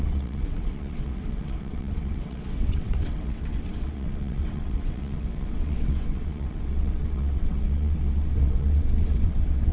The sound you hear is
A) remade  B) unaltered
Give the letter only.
A